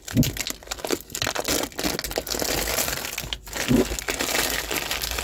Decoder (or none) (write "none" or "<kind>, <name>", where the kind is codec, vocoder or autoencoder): none